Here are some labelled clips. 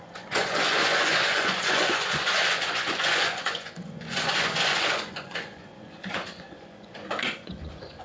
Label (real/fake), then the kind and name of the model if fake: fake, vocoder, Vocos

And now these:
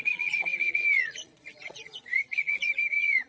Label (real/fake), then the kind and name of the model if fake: fake, vocoder, Vocos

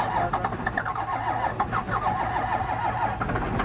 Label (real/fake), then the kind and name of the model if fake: real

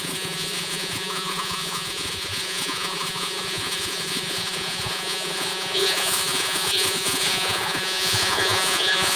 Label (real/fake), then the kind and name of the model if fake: fake, vocoder, Vocos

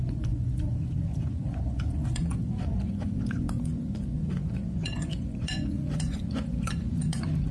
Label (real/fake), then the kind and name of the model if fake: fake, vocoder, Vocos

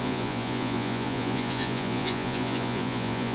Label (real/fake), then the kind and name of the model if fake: fake, vocoder, Vocos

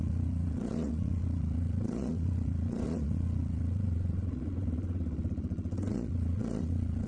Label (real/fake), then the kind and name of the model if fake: fake, vocoder, Vocos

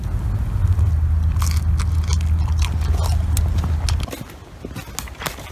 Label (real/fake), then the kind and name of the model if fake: real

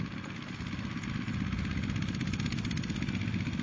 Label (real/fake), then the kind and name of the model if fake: real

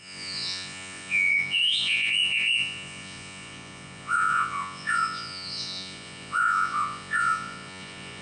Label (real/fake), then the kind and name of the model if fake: fake, vocoder, Vocos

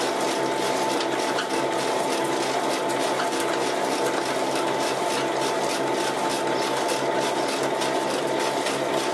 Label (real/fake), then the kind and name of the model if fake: real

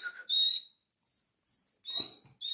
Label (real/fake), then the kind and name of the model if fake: real